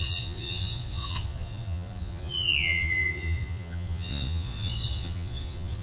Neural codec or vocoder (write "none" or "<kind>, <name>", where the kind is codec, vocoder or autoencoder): vocoder, Vocos